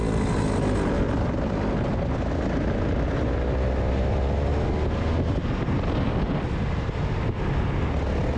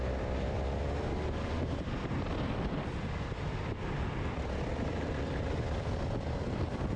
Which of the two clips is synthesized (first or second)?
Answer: second